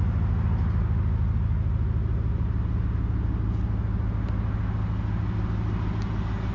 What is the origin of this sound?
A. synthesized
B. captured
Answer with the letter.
B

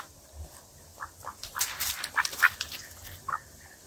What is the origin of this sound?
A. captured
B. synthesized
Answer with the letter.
A